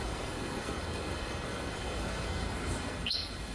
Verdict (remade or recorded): remade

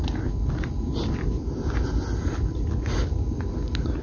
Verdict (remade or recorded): recorded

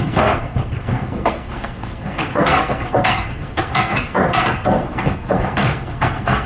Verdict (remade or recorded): remade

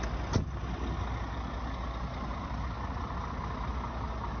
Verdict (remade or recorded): recorded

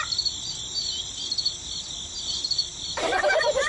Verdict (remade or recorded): recorded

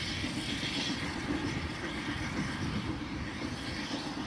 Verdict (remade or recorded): recorded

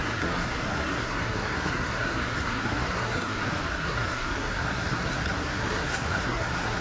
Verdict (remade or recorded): remade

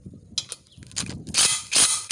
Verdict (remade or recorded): recorded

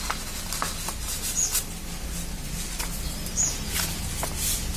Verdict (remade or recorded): recorded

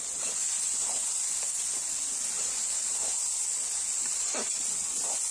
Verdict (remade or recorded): recorded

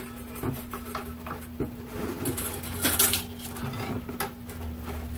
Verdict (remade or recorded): recorded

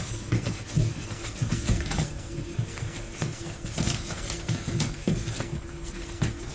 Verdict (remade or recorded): remade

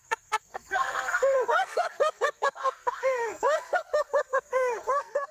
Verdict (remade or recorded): remade